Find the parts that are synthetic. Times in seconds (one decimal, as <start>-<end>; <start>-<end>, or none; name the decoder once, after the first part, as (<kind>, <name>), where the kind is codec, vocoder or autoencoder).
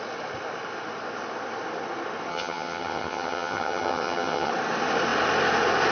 2.3-4.5 (vocoder, HiFi-GAN)